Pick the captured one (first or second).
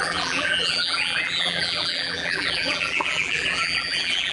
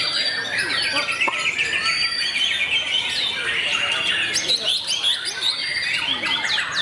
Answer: second